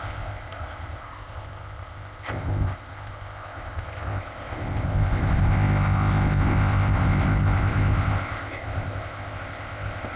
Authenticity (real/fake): fake